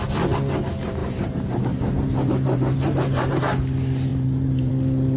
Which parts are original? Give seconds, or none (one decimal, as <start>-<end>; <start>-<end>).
0.0-1.0; 3.4-4.1; 4.7-5.2